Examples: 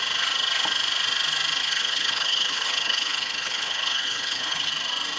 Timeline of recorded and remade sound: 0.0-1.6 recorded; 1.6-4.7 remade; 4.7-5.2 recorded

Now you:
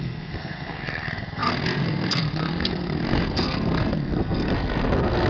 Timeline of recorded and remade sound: 0.0-5.3 remade

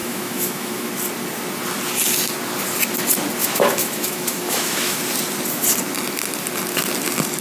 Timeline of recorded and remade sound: 0.0-0.9 remade; 0.9-3.4 recorded; 3.4-5.0 remade; 5.0-7.4 recorded

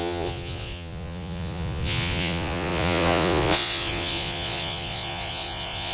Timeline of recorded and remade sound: 0.0-5.9 remade

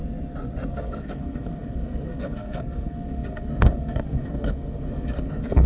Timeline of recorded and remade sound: 0.0-0.7 recorded; 0.7-5.7 remade